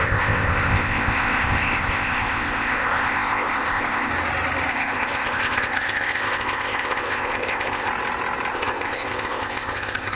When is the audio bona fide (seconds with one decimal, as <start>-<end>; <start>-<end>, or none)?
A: 4.1-4.7; 7.9-8.5

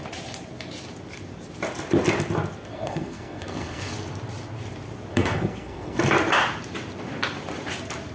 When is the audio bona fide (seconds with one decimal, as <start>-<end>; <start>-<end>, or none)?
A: 0.0-2.7; 3.9-5.1; 6.0-8.1

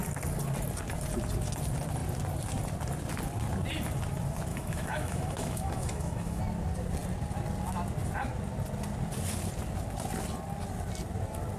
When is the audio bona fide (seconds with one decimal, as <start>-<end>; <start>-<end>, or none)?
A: 0.0-4.5; 6.4-11.6

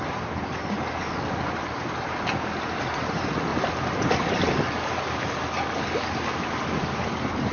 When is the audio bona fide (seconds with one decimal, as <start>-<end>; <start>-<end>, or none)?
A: 0.0-7.5

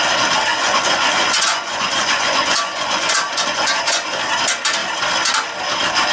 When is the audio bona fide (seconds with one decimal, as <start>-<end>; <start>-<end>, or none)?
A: 0.0-0.5; 4.2-6.1

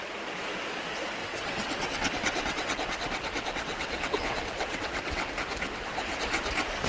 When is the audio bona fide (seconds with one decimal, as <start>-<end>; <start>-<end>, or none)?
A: 0.0-1.2; 5.3-6.9